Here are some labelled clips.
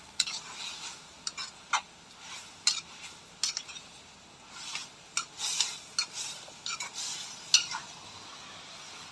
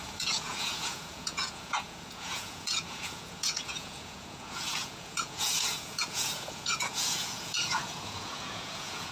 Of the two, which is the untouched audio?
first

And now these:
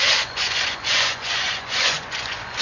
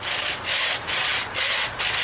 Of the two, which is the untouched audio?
second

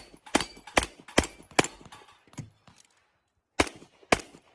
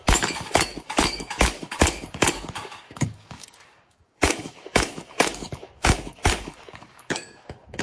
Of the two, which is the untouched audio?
first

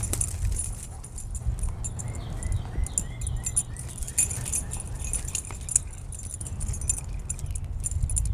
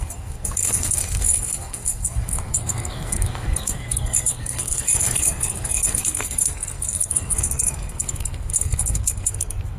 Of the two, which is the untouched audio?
first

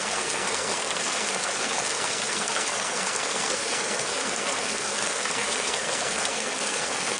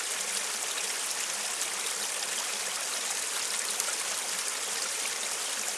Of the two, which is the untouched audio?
second